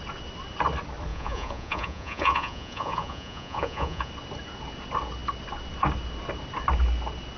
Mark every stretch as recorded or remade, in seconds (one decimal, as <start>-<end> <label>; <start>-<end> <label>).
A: 0.0-1.1 recorded; 1.1-4.1 remade; 4.1-7.4 recorded

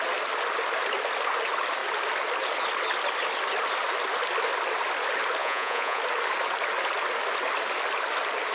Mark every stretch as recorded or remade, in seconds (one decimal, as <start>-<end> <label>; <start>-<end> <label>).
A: 0.0-5.4 recorded; 5.4-6.0 remade; 6.0-8.5 recorded

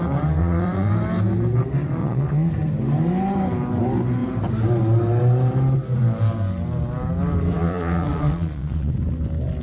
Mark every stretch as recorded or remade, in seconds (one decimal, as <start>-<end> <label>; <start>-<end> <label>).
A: 0.0-0.4 recorded; 0.4-0.9 remade; 0.9-2.0 recorded; 2.0-2.5 remade; 2.5-7.6 recorded; 7.6-8.9 remade; 8.9-9.6 recorded